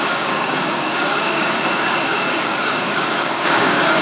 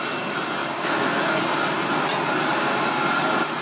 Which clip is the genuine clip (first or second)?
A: second